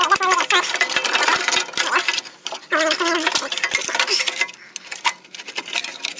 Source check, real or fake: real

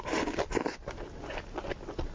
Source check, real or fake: real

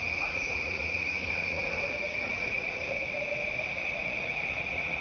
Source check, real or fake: fake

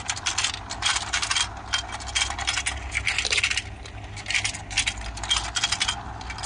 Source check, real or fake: real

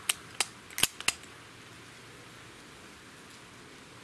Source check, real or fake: real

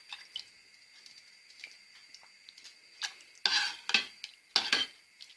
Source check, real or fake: real